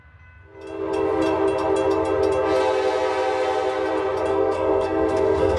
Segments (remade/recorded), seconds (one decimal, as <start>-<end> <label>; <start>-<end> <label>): 0.0-4.3 recorded; 4.3-5.6 remade